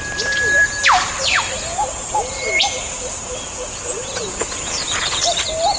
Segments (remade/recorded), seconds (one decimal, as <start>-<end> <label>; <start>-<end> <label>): 0.0-1.7 recorded; 1.7-5.2 remade; 5.2-5.8 recorded